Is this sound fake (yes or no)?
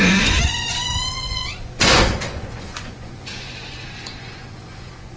yes